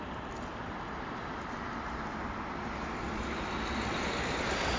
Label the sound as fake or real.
real